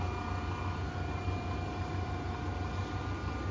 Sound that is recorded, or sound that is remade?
recorded